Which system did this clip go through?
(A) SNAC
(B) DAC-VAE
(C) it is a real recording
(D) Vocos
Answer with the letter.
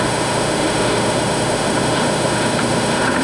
B